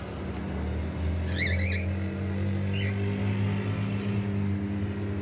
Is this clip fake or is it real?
real